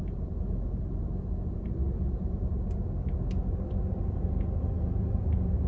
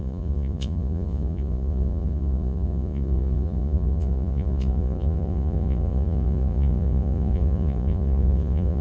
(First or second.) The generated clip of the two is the second